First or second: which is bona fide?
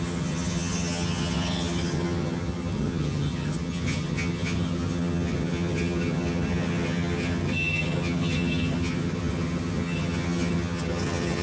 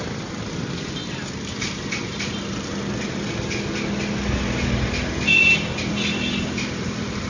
second